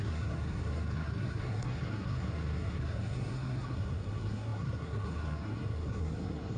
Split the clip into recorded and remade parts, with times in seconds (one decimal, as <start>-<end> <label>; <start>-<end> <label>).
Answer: 0.0-6.6 remade